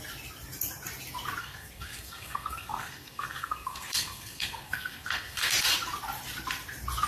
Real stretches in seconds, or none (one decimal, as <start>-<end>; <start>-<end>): 0.0-1.4; 5.5-7.1